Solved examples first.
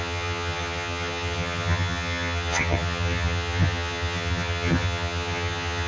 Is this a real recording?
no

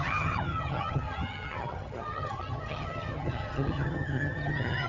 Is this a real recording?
no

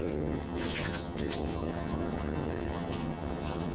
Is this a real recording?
no